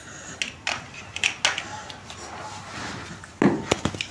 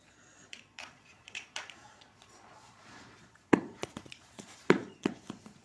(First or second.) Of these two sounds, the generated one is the second